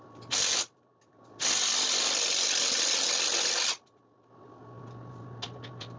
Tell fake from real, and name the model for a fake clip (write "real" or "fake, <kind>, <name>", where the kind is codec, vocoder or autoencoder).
real